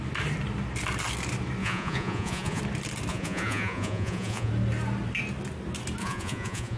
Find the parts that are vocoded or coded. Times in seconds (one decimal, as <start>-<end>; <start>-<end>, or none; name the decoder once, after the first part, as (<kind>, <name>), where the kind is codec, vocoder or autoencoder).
1.6-2.6 (vocoder, Vocos); 3.1-4.5; 6.0-6.8